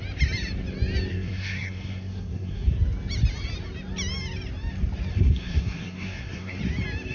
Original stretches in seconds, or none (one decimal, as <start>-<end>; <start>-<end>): 0.0-1.1; 2.7-5.1; 6.6-7.1